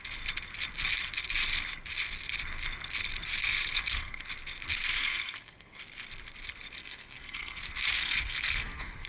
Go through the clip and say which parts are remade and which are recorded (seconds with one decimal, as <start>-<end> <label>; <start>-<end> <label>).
0.0-3.4 recorded; 3.4-4.2 remade; 4.2-5.0 recorded; 5.0-5.8 remade; 5.8-6.8 recorded; 6.8-7.6 remade; 7.6-8.0 recorded; 8.0-9.1 remade